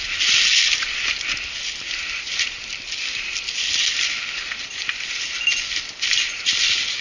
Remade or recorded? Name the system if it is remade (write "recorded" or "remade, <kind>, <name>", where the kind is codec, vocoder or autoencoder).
recorded